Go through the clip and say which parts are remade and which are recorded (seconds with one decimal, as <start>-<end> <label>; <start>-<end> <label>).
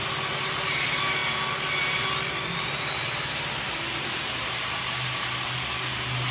0.0-6.3 recorded